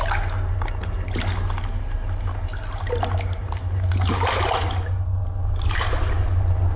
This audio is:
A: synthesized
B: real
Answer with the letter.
B